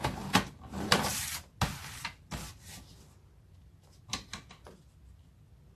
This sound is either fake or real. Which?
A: real